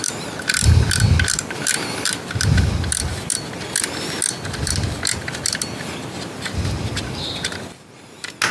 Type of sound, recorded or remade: recorded